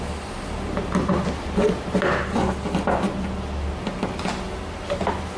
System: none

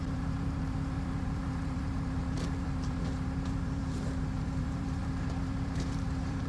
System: vocoder, BigVGAN v2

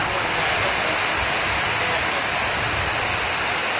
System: none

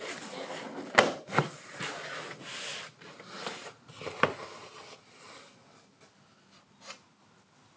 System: none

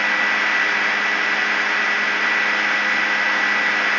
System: none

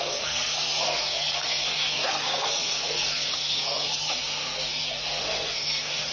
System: codec, SNAC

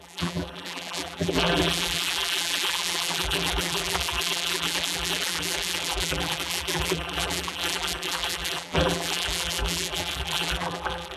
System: vocoder, BigVGAN v2